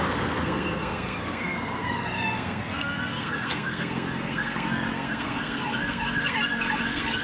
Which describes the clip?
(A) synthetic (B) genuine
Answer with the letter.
A